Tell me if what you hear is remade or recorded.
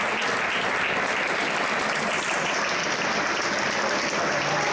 recorded